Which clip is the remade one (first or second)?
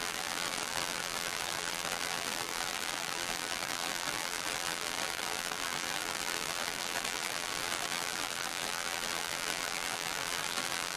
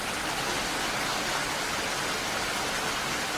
first